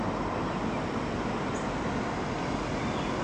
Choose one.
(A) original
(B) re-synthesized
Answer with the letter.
A